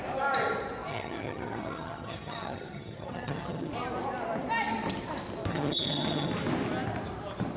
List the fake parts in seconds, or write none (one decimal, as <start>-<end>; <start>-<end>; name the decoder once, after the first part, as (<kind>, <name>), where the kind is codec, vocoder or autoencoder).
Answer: 0.9-3.7 (vocoder, HiFi-GAN); 5.5-6.3